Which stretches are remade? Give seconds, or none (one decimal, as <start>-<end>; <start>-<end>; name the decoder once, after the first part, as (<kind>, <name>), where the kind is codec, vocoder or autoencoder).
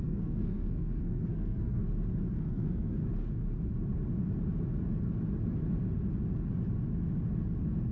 0.0-1.8 (codec, SNAC); 2.3-3.0